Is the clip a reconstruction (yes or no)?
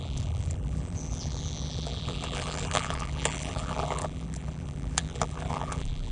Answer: yes